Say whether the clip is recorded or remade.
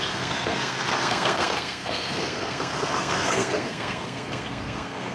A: remade